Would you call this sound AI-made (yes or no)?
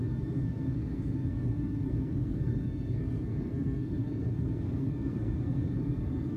yes